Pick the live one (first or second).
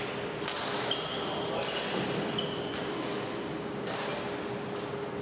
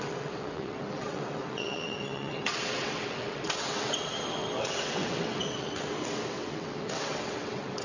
first